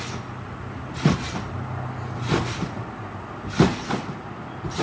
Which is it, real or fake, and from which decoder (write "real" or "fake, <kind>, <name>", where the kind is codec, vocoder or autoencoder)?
real